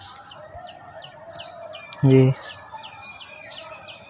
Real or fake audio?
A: real